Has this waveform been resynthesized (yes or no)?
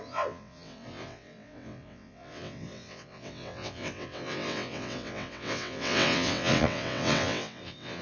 yes